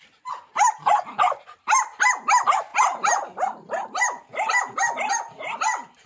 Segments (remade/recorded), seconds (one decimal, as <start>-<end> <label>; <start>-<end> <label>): 0.0-2.7 recorded; 2.7-5.1 remade; 5.1-6.1 recorded